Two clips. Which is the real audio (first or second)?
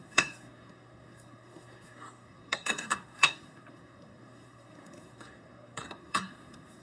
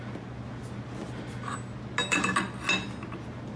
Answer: second